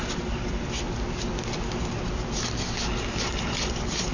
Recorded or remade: recorded